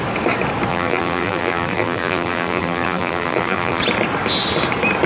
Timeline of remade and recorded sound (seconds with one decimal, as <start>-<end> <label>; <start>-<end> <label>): 0.0-0.7 recorded; 0.7-3.8 remade; 3.8-5.1 recorded